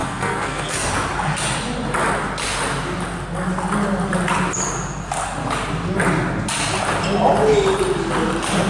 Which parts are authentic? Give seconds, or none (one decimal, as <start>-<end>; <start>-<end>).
0.9-8.7